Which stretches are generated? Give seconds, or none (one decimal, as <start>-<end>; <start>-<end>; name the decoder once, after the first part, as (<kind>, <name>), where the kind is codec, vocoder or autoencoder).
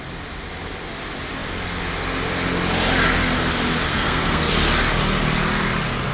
3.9-4.5 (codec, SNAC)